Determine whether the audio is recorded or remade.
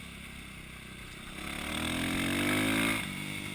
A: recorded